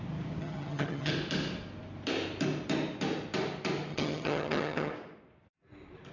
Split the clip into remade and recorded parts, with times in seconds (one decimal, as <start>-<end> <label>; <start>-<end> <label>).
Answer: 0.0-0.4 recorded; 0.4-1.1 remade; 1.1-3.9 recorded; 3.9-4.9 remade; 4.9-6.1 recorded